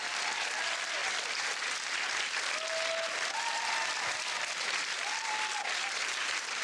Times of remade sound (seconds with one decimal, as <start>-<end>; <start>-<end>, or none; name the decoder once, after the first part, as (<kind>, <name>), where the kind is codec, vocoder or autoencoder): none